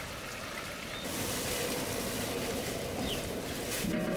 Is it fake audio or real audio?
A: fake